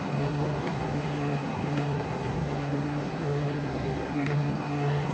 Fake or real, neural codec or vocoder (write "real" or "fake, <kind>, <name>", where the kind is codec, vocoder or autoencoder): fake, codec, SNAC